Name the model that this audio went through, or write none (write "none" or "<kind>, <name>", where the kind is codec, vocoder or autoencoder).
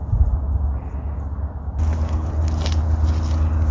none